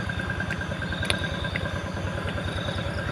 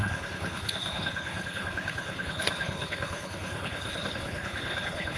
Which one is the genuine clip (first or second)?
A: first